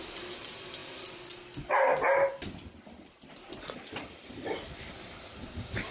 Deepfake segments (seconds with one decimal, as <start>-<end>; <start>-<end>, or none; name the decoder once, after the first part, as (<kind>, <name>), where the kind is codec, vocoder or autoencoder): none